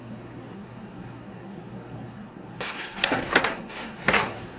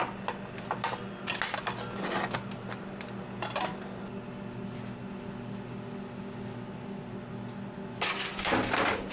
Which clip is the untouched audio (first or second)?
second